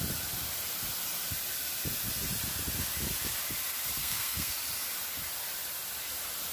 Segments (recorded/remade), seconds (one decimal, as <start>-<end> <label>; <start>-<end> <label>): 0.0-4.0 recorded; 4.0-4.5 remade; 4.5-6.5 recorded